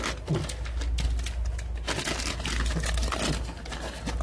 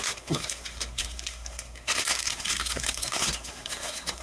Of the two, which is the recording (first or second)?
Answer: first